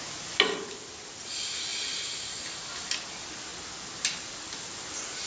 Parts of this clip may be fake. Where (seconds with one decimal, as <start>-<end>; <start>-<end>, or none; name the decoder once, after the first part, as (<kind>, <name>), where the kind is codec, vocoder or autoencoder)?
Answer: none

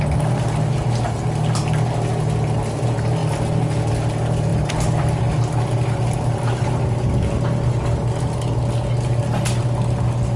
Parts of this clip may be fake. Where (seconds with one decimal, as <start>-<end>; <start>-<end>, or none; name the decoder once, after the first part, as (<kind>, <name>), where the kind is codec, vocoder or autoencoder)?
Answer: none

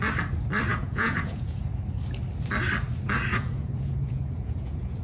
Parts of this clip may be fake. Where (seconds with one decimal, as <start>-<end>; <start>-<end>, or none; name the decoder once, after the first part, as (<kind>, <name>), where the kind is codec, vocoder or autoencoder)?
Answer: 0.7-1.6 (vocoder, Vocos); 3.3-5.0

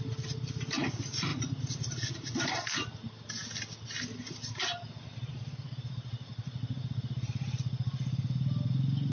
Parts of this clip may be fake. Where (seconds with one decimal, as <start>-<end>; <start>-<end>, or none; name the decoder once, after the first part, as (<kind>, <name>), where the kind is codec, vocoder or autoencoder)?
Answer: none

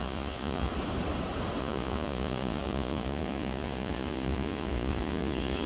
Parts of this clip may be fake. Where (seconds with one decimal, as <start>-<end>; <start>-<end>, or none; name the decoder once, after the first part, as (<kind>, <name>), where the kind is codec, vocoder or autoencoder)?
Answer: 0.0-0.7 (vocoder, Vocos); 1.6-5.7

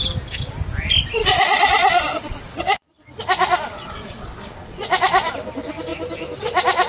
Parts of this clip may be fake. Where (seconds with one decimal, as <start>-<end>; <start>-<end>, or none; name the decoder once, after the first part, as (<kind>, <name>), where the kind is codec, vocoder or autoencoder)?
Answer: 1.2-5.3 (vocoder, Vocos)